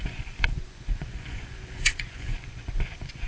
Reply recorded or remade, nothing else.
remade